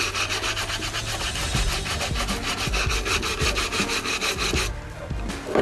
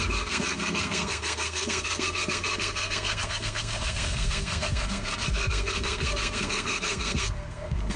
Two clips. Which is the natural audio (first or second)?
first